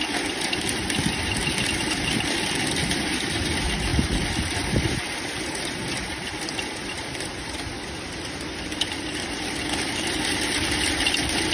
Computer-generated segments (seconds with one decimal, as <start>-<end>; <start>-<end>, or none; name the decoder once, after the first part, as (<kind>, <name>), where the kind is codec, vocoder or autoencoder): none